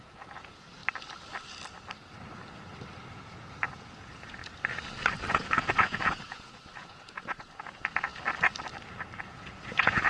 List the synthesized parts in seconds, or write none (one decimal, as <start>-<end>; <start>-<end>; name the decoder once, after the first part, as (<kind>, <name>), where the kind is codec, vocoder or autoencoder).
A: 0.0-0.8 (vocoder, Vocos); 3.1-4.4; 5.3-8.1; 9.2-10.1